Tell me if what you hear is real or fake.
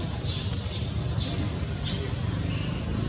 real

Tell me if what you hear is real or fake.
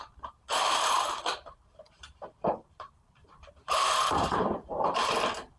fake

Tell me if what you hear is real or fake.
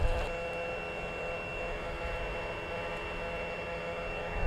real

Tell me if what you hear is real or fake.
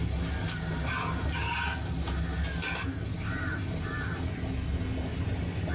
real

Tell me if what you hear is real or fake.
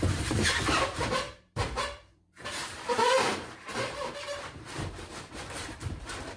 fake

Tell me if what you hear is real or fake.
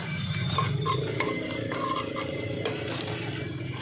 real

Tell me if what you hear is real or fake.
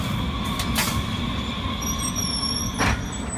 real